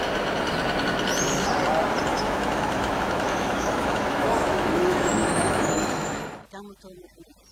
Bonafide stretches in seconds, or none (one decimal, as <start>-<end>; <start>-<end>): 0.0-2.1; 6.2-7.5